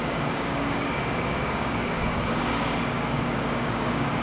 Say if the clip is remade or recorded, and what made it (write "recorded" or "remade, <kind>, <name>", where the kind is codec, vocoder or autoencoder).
remade, codec, DAC